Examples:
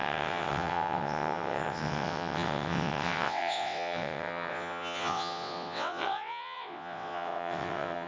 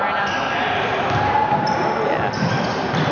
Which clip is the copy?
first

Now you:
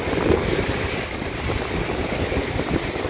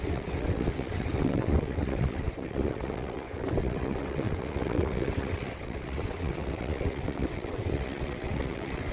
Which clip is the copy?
second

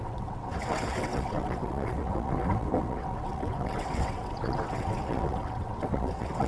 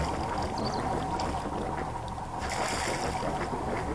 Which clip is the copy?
first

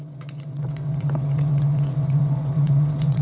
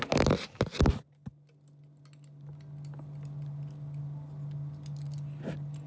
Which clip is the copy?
first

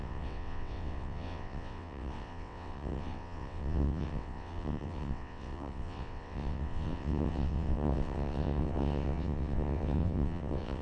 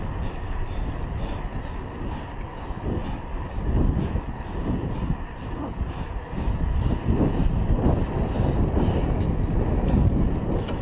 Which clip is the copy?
first